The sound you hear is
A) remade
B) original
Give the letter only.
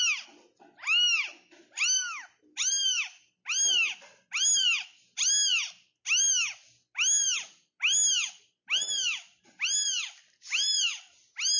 B